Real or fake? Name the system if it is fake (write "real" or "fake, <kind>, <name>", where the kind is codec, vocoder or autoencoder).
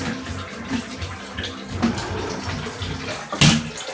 real